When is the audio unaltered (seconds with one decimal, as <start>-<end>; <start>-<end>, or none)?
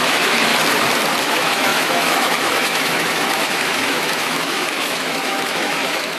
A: 0.5-1.2